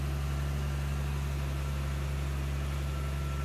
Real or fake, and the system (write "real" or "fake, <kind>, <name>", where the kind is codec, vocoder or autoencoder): real